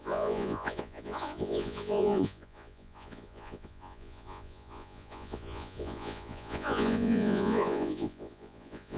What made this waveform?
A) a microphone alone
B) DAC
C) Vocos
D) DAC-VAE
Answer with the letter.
C